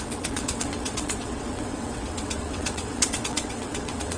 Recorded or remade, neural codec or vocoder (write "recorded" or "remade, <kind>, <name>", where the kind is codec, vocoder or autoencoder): remade, vocoder, WaveNeXt